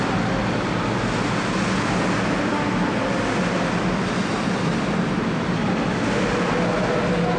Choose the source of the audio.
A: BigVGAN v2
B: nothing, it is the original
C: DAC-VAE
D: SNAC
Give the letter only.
B